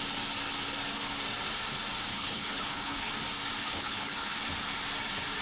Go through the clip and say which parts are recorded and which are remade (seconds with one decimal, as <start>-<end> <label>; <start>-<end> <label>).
0.0-2.1 recorded; 2.1-3.1 remade; 3.1-3.6 recorded; 3.6-4.4 remade; 4.4-5.4 recorded